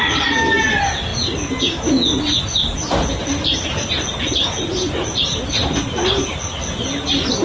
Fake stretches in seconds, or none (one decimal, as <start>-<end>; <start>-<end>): 4.4-5.0